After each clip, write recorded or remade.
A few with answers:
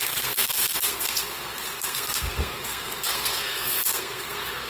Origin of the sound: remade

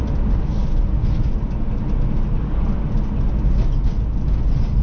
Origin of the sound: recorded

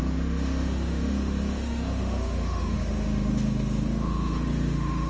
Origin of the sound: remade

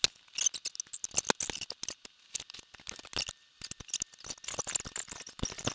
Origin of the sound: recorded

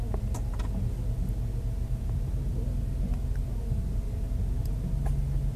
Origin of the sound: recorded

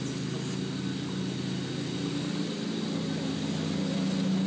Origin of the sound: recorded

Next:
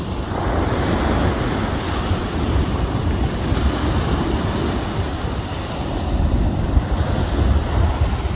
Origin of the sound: recorded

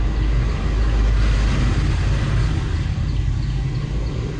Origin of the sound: recorded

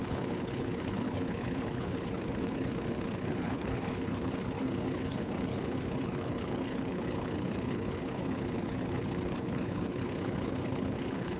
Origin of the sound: remade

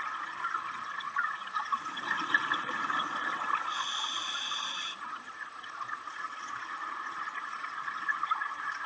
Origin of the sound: remade